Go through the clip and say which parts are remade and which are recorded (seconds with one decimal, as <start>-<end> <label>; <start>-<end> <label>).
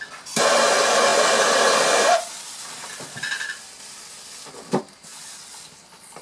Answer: 0.0-1.1 recorded; 1.1-4.8 remade; 4.8-6.2 recorded